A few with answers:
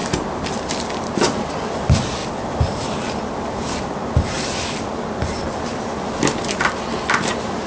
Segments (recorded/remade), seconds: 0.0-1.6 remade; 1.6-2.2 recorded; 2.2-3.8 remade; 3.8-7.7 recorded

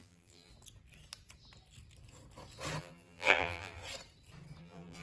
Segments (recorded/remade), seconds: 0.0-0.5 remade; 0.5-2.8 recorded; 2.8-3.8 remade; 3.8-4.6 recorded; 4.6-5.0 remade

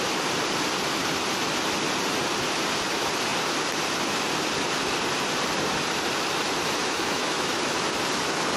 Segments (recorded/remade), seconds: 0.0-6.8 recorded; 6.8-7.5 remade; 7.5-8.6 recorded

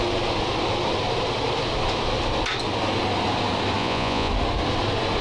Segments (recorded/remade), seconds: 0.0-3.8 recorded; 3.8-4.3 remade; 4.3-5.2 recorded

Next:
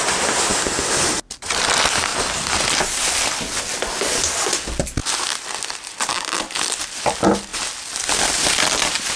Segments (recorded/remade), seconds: 0.0-5.0 recorded; 5.0-6.2 remade; 6.2-7.5 recorded; 7.5-9.2 remade